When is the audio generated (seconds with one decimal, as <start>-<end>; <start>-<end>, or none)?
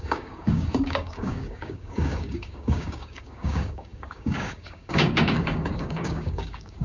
0.0-6.8